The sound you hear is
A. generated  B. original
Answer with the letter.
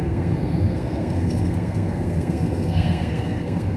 A